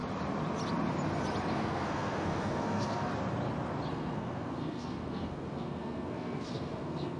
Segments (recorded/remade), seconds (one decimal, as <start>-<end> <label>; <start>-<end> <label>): 0.0-1.5 recorded; 1.5-3.1 remade; 3.1-3.9 recorded; 3.9-7.2 remade